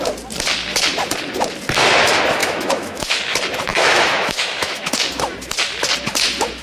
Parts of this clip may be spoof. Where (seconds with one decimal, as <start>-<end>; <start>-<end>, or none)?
2.4-3.2; 3.7-4.9